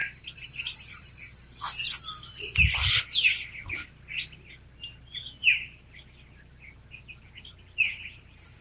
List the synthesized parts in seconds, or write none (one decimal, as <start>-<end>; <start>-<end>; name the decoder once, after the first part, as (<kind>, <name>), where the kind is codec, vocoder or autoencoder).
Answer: 0.0-1.6 (vocoder, BigVGAN v2)